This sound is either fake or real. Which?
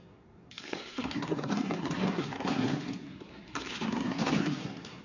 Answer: fake